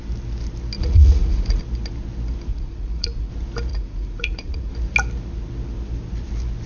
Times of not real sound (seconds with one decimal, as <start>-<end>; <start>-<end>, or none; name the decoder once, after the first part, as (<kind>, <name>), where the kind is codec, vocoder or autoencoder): 0.8-1.6 (vocoder, Vocos); 2.5-3.3; 3.7-4.7